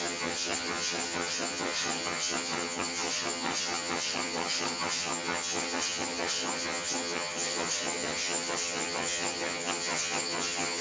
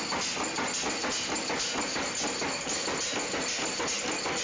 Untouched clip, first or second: second